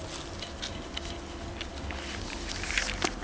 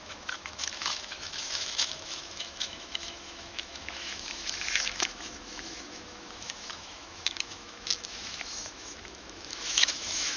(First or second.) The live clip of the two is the first